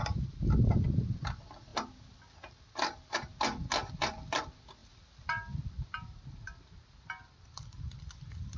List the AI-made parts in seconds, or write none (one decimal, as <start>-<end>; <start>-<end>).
none

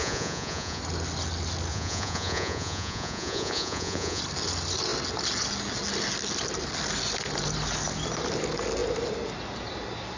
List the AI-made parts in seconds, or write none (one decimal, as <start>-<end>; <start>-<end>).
0.0-0.8; 1.7-4.2

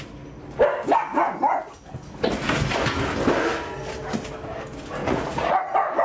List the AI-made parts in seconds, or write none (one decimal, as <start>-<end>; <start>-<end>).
5.0-5.6

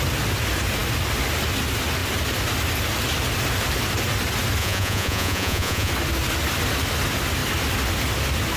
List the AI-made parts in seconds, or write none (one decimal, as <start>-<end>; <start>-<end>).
4.6-5.9

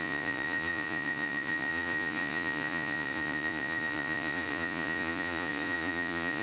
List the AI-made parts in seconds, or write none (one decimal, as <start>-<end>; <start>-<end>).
0.0-6.4

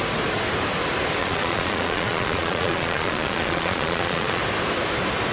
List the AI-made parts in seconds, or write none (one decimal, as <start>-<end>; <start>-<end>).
1.2-4.4

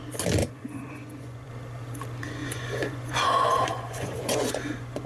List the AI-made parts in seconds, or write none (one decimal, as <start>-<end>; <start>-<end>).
0.4-1.5; 2.4-5.1